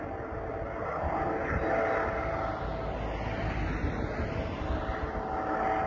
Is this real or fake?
real